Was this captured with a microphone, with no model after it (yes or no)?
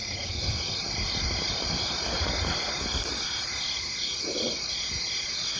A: yes